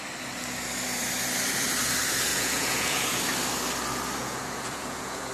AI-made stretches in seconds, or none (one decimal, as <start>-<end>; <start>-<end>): 2.3-3.2; 4.2-5.3